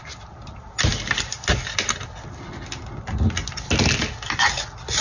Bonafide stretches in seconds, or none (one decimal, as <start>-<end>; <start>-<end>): 0.0-5.0